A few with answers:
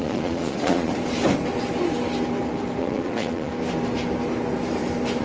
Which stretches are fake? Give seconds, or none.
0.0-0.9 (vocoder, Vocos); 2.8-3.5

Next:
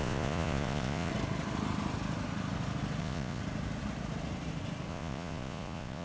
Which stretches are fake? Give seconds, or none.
0.0-1.1 (vocoder, Vocos); 3.0-3.4; 4.9-6.0

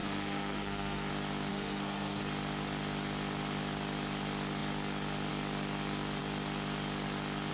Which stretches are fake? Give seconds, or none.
0.0-1.1 (codec, SNAC); 1.5-2.2

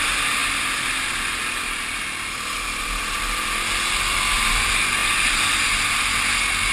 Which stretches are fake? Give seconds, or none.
none

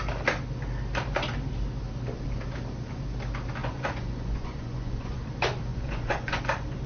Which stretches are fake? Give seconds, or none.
3.6-5.2 (vocoder, Vocos); 5.7-6.4

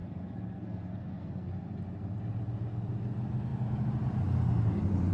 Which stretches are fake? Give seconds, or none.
0.0-1.5 (codec, SNAC)

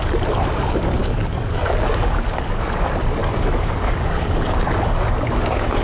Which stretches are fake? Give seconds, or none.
1.0-2.8 (codec, DAC); 3.2-5.1